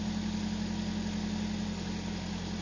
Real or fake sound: real